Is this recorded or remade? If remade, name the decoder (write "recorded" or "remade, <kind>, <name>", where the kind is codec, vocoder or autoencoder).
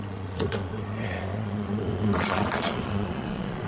remade, vocoder, Vocos